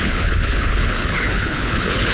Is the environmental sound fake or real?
fake